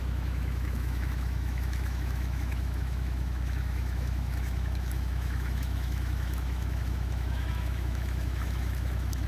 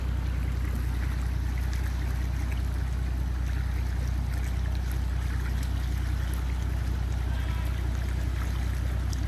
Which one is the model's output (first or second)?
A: first